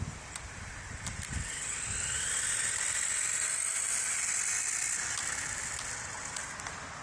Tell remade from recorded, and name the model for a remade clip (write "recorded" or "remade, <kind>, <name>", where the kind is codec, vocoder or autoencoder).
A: recorded